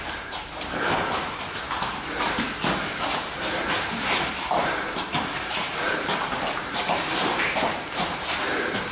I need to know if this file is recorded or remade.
remade